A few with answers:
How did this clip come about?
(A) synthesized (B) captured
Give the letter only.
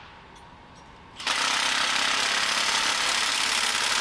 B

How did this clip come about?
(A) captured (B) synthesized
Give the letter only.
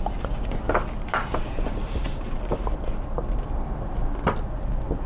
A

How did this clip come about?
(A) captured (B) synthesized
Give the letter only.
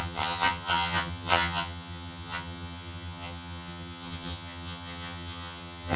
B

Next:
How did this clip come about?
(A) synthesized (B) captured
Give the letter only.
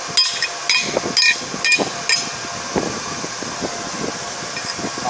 B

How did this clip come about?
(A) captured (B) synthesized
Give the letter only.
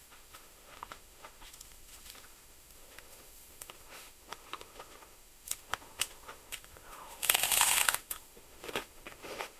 B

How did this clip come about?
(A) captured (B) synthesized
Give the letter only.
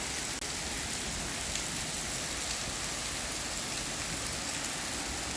A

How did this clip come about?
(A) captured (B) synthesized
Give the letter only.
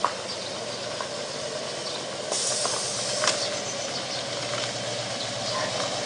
A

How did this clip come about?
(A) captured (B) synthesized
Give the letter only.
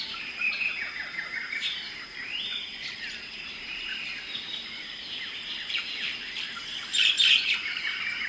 B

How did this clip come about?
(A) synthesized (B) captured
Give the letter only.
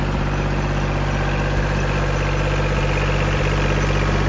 B